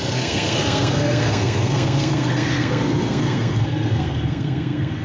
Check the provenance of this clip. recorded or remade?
remade